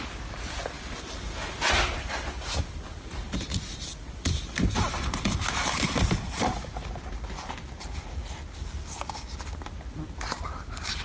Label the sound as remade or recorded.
recorded